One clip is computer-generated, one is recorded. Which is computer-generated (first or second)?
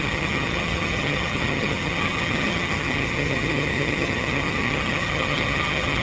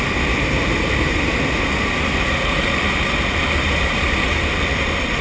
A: first